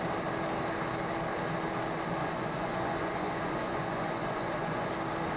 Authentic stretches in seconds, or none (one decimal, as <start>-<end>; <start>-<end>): 0.0-2.2; 4.9-5.4